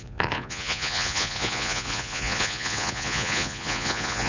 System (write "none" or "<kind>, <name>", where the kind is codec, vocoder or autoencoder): vocoder, Vocos